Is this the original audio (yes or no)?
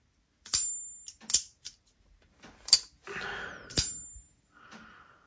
yes